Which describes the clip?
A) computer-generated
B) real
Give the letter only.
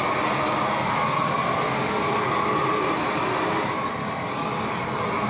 B